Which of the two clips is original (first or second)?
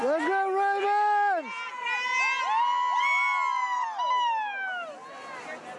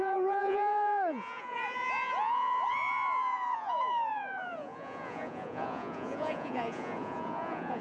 first